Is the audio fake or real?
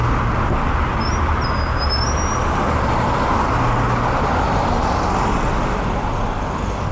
real